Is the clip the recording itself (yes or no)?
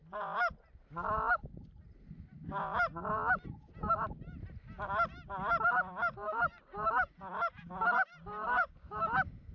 yes